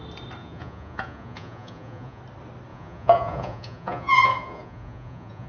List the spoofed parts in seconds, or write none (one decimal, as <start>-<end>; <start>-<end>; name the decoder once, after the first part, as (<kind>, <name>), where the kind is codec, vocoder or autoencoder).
0.4-2.2 (vocoder, Vocos); 2.7-5.5